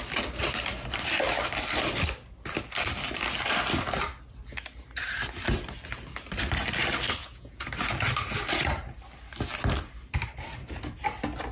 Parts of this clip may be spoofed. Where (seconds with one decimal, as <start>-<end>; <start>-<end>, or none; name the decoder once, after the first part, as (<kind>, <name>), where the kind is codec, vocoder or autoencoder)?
7.2-7.7 (vocoder, Vocos)